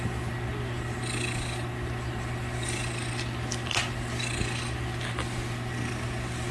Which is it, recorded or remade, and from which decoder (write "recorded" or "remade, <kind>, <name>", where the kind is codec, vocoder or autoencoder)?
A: recorded